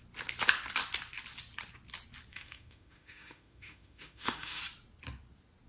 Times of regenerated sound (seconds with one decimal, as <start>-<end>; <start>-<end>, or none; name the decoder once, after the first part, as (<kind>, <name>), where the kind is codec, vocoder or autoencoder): 2.3-4.6 (autoencoder, DAC-VAE)